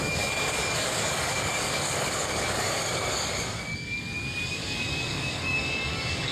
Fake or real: fake